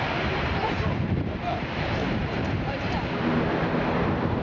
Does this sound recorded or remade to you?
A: remade